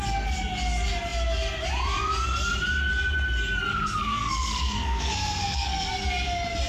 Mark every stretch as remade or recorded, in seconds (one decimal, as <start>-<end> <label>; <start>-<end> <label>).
0.0-3.7 recorded; 3.7-5.9 remade; 5.9-6.7 recorded